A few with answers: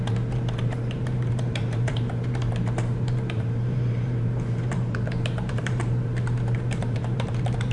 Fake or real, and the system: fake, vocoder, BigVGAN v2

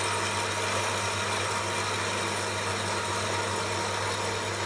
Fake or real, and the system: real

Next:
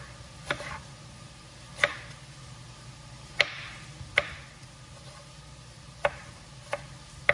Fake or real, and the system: real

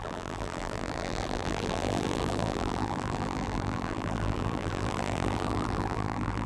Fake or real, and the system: fake, vocoder, BigVGAN v2